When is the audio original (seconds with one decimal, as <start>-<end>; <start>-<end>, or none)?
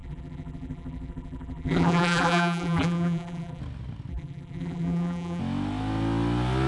3.6-4.1; 5.4-6.7